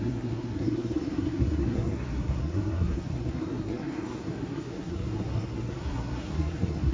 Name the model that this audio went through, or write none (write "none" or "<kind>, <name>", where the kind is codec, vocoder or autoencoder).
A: codec, SNAC